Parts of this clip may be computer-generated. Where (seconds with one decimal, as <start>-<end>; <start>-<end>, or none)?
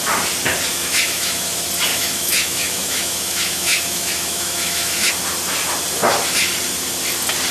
0.7-1.5; 1.9-5.1